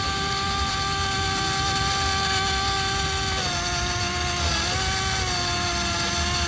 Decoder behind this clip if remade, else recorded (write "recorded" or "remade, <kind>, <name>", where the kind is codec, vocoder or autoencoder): recorded